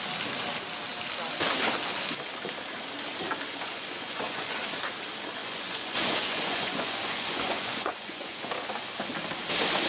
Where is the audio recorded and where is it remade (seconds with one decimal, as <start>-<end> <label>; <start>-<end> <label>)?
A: 0.0-3.5 recorded; 3.5-4.6 remade; 4.6-5.4 recorded; 5.4-8.5 remade; 8.5-9.9 recorded